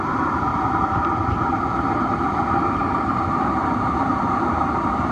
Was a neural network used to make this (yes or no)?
yes